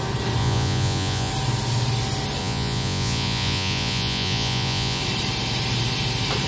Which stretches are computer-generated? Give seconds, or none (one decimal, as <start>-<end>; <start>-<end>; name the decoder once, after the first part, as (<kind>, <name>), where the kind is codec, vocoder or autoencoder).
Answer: 0.4-1.3 (vocoder, Vocos); 2.4-5.0